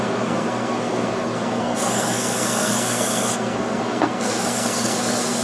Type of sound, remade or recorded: remade